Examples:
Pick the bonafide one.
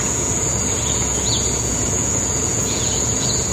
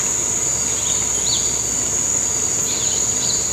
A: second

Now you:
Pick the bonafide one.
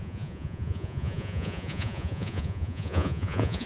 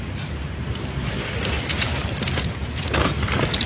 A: second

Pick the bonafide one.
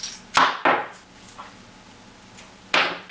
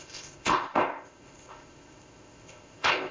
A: first